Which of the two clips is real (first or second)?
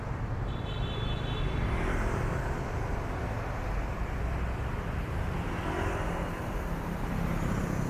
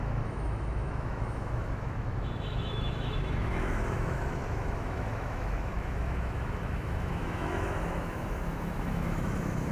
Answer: first